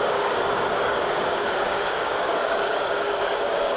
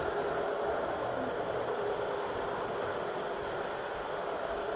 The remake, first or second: first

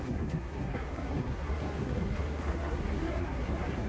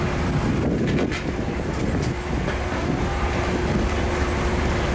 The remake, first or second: first